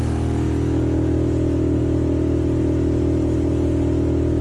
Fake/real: real